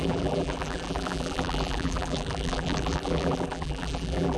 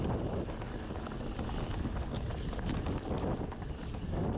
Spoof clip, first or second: first